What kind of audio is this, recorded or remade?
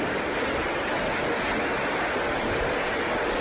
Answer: recorded